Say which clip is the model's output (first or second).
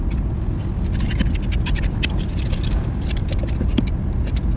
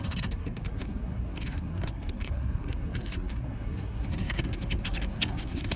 second